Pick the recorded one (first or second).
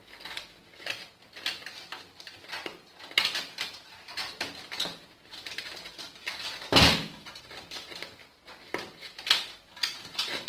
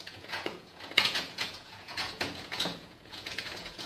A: first